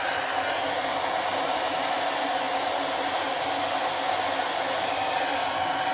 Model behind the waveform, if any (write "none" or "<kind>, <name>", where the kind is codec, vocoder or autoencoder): none